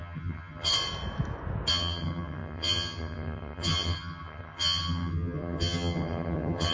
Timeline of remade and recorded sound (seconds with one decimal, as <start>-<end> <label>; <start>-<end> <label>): 0.0-0.7 remade; 0.7-1.7 recorded; 1.7-6.7 remade